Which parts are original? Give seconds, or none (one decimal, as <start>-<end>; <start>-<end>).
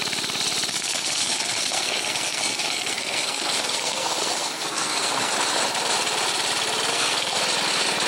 0.0-0.7; 5.3-6.9; 7.4-8.1